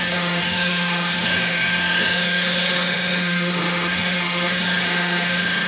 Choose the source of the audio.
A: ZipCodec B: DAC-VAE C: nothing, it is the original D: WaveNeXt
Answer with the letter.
B